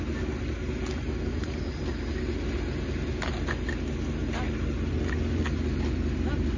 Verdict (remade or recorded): recorded